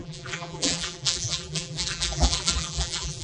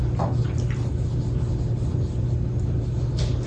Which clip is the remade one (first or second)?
first